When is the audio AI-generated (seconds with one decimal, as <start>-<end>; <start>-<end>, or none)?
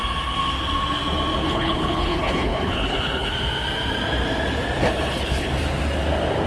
1.4-3.3; 4.8-5.5